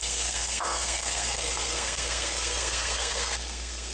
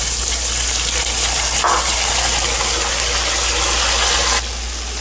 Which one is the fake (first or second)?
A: first